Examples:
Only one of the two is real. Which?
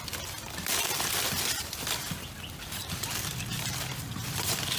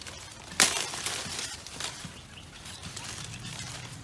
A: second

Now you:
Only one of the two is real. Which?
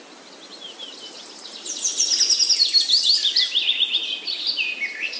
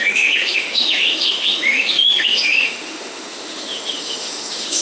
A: first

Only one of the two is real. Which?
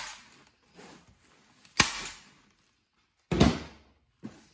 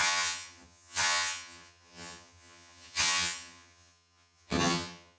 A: first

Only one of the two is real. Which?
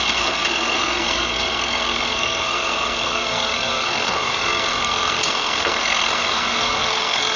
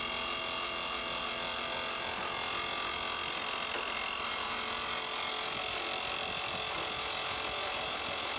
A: second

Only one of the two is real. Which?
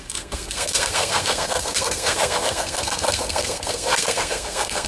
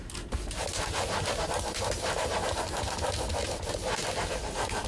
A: second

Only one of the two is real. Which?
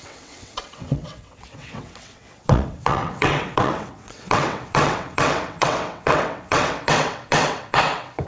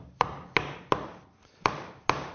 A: second